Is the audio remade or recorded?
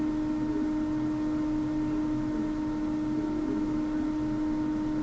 recorded